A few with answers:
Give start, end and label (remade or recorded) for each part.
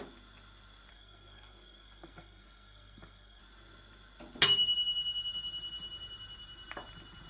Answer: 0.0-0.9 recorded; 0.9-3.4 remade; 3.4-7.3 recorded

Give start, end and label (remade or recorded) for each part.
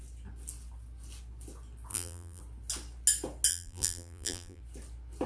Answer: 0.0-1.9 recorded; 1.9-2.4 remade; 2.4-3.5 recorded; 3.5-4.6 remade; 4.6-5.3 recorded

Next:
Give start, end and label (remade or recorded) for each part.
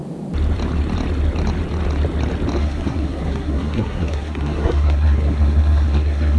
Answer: 0.0-2.6 recorded; 2.6-6.4 remade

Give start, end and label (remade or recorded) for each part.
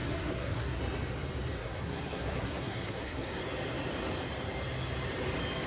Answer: 0.0-0.8 remade; 0.8-1.6 recorded; 1.6-3.4 remade; 3.4-5.7 recorded